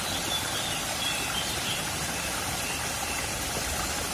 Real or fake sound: real